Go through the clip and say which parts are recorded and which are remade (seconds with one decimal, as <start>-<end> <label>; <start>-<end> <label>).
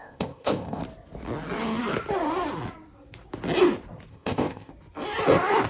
0.0-0.8 remade; 0.8-4.1 recorded; 4.1-4.7 remade; 4.7-5.7 recorded